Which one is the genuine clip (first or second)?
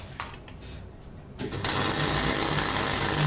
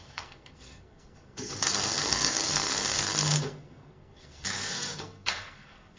first